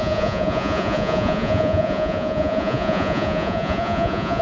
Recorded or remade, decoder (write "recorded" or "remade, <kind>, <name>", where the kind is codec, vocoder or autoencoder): remade, vocoder, Vocos